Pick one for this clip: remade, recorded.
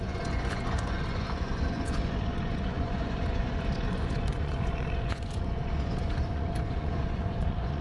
remade